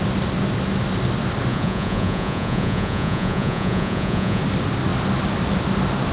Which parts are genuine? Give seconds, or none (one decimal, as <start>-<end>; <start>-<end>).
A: 0.0-1.5; 4.4-6.1